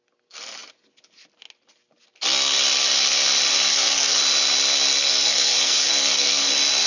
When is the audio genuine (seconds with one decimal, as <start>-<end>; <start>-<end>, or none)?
0.0-3.5; 4.2-5.0; 6.5-6.9